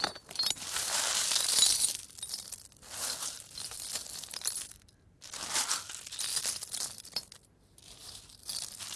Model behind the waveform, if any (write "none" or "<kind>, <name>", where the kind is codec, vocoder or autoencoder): none